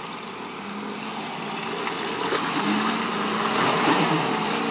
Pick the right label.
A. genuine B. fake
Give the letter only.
A